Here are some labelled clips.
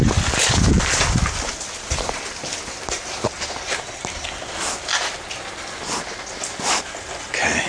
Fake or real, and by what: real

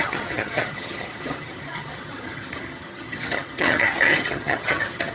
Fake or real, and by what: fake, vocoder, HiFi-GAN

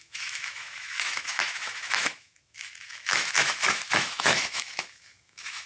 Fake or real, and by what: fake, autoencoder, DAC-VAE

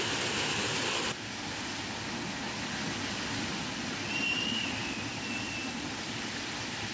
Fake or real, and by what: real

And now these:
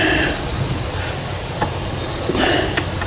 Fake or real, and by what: real